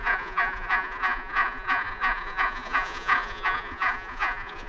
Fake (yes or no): yes